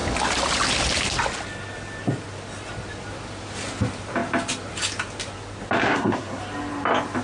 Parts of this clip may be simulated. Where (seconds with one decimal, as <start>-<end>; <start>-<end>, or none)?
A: 5.8-6.4